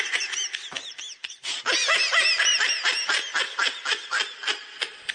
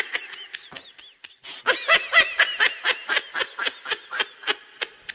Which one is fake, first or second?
first